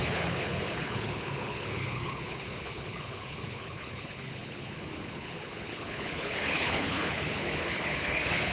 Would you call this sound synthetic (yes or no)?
yes